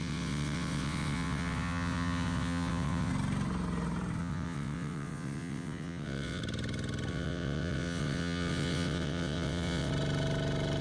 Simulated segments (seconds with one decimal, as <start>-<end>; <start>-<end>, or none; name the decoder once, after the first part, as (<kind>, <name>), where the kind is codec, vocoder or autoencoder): 0.0-3.1 (vocoder, WaveNeXt); 4.2-6.4; 7.1-9.9